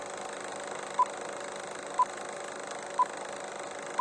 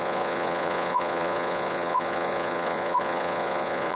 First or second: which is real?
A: first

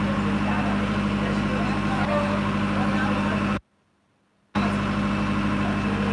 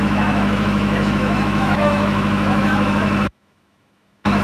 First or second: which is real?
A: first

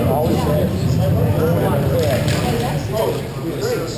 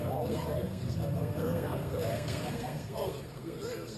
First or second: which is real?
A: first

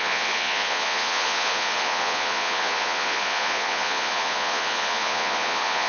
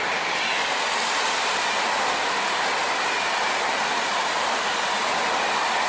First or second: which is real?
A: second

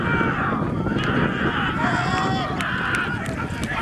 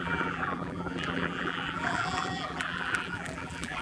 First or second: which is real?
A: first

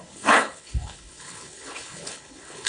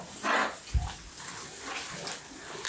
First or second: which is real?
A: second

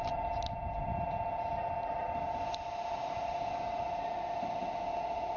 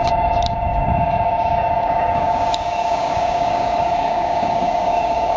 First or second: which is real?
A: first